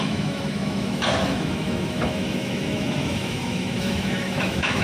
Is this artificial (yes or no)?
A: yes